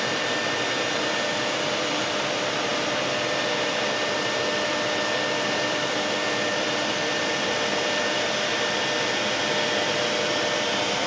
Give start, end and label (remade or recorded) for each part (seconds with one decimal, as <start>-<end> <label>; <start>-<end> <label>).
0.0-11.1 recorded